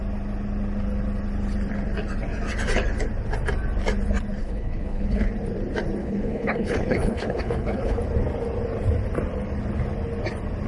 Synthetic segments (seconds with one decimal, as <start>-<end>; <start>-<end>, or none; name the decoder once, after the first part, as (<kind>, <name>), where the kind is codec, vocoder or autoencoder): 4.4-5.3 (codec, HILCodec); 6.0-8.0